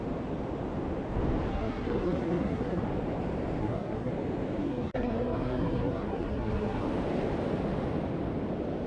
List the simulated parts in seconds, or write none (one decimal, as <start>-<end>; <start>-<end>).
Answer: 1.5-2.8; 3.6-4.1; 4.6-6.8